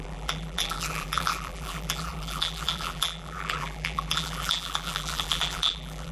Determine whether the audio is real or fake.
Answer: fake